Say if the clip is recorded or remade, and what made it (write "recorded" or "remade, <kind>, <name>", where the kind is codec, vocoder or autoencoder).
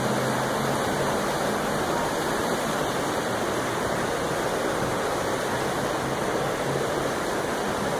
recorded